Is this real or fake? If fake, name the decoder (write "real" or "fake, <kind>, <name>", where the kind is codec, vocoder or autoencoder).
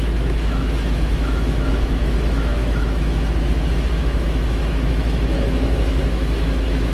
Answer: fake, autoencoder, DAC-VAE